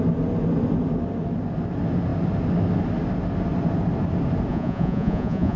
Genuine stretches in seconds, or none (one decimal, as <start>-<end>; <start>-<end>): 0.0-4.5